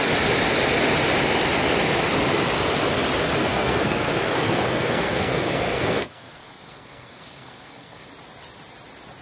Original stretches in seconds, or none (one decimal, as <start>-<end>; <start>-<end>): 0.0-3.4; 8.1-9.2